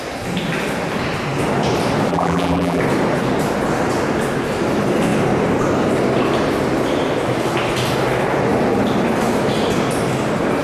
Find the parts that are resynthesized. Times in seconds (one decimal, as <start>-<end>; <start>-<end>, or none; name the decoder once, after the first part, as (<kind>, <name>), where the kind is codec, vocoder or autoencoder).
2.1-2.8 (vocoder, BigVGAN v2)